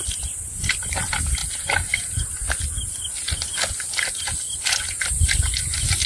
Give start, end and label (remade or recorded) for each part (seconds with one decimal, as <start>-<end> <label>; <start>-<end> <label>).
0.0-6.1 recorded

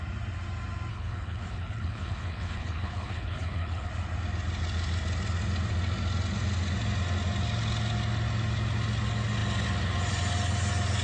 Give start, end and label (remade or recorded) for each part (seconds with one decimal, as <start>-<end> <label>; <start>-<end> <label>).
0.0-0.9 recorded; 0.9-3.9 remade; 3.9-11.0 recorded

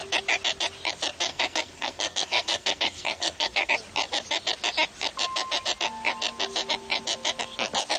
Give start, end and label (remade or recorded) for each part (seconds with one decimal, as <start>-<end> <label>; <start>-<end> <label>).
0.0-1.3 recorded; 1.3-3.7 remade; 3.7-8.0 recorded

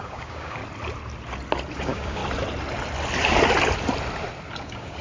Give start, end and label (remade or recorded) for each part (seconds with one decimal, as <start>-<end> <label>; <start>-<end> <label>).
0.0-0.6 remade; 0.6-1.8 recorded; 1.8-2.2 remade; 2.2-4.6 recorded; 4.6-5.0 remade